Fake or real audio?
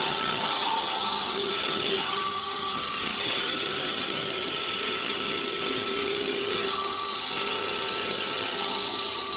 fake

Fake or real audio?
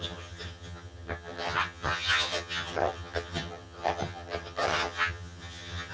fake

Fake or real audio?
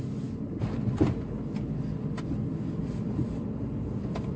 real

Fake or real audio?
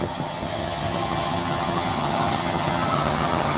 fake